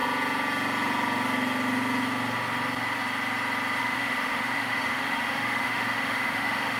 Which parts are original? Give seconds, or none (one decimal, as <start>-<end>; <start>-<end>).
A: 0.0-3.8